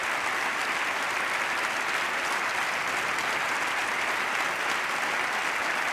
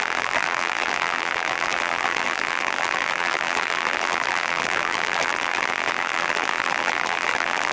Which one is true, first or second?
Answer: first